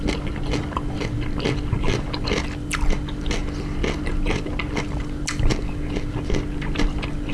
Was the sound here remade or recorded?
recorded